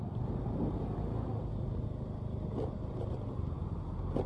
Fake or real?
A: real